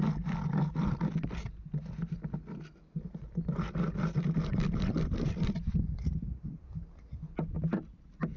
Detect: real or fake real